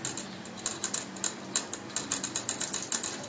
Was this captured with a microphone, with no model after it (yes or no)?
yes